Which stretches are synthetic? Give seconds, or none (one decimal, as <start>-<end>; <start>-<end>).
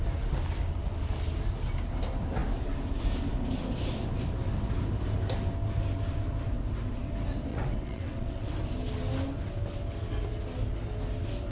7.5-8.5